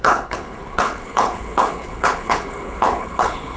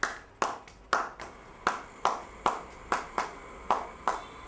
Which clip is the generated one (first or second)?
first